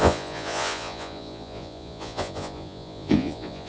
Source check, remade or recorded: remade